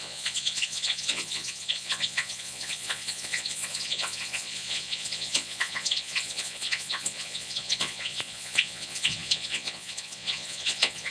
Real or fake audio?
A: fake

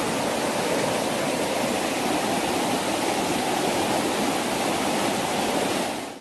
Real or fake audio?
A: real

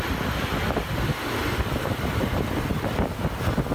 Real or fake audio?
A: real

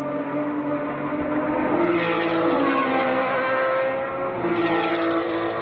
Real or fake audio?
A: real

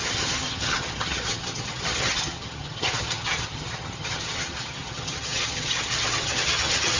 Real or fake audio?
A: fake